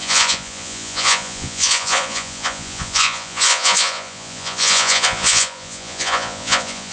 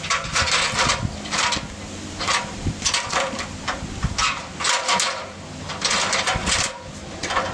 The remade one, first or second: first